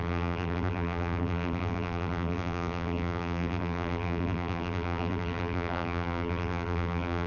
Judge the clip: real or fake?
fake